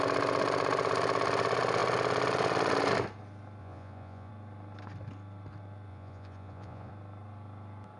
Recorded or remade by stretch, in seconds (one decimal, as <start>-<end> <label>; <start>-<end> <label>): 0.0-3.6 recorded; 3.6-4.3 remade; 4.3-5.9 recorded; 5.9-6.9 remade; 6.9-8.0 recorded